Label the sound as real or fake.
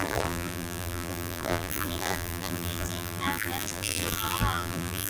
fake